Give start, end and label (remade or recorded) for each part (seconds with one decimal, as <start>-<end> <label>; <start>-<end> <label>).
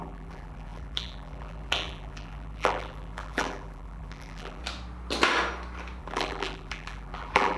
0.0-4.6 remade; 4.6-6.0 recorded; 6.0-7.6 remade